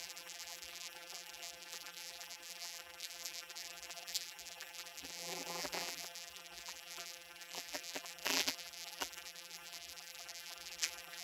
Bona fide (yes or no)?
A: no